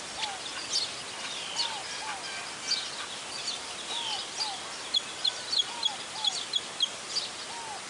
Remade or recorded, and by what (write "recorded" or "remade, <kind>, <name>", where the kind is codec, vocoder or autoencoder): recorded